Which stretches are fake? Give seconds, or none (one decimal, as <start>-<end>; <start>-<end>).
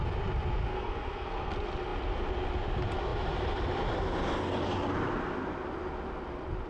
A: 0.7-1.5